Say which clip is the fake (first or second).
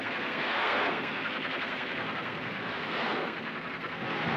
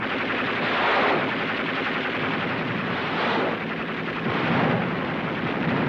first